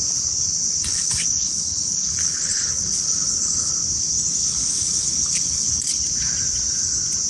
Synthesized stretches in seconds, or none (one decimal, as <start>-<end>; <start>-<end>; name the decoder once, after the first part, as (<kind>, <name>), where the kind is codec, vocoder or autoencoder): 0.8-3.7 (codec, HILCodec); 4.4-6.0